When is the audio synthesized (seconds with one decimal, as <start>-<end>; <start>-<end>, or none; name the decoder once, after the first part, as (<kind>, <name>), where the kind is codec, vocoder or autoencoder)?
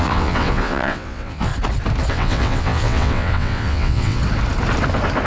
0.0-1.5 (vocoder, WaveNeXt); 2.1-4.2